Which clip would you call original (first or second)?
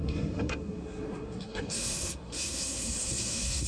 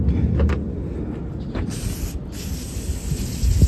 second